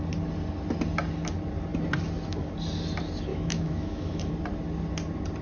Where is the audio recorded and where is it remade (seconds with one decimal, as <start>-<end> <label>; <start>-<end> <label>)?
0.0-3.3 recorded; 3.3-4.3 remade; 4.3-5.4 recorded